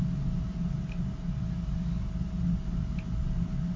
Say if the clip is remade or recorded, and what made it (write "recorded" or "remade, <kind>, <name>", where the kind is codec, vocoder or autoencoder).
recorded